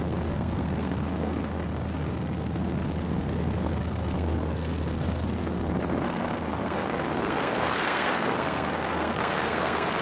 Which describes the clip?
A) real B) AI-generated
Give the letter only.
B